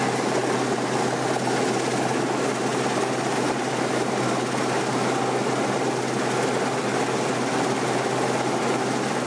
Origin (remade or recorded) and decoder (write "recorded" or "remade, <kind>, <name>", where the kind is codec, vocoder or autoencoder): recorded